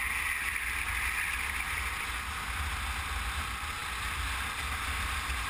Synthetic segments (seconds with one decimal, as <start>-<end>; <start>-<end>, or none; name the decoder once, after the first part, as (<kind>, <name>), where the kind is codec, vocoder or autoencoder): none